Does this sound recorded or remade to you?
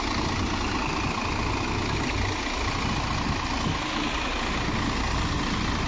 recorded